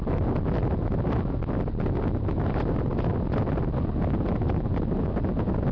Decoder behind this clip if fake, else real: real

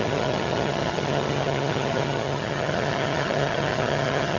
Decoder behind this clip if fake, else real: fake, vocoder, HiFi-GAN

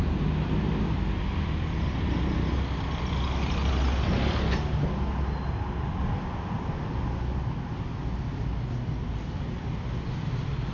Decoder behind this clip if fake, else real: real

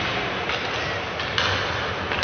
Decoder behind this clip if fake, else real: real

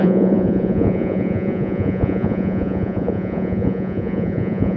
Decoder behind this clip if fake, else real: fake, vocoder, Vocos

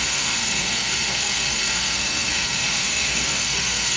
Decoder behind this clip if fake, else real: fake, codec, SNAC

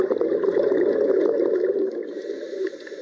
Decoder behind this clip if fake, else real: real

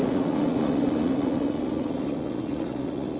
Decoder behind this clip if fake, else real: fake, vocoder, Vocos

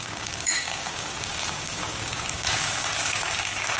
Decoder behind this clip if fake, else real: fake, codec, DAC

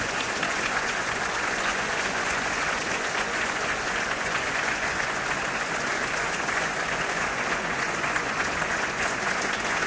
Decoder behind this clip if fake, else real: fake, vocoder, Vocos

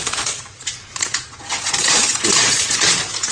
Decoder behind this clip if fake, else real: fake, vocoder, Vocos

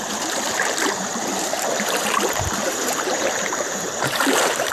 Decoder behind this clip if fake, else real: fake, vocoder, BigVGAN v2